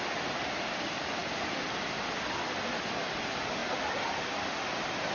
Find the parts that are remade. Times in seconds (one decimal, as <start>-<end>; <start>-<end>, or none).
none